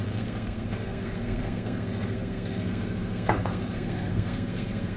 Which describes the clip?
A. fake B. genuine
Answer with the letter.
A